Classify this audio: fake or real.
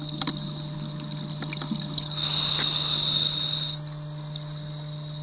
real